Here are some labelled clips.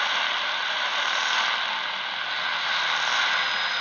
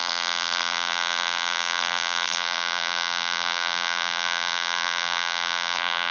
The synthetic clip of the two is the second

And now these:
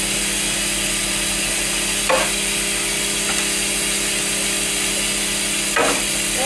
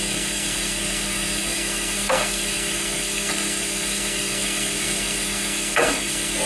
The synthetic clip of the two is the second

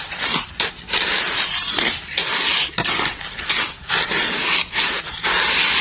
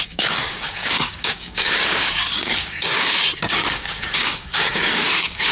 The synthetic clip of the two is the second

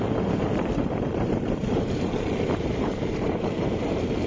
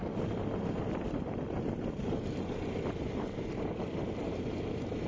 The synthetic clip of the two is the first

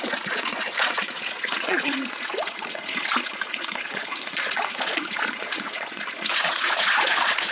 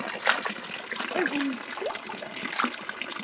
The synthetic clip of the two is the first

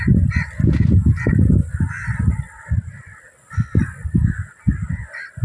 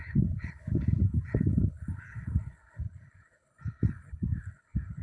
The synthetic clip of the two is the second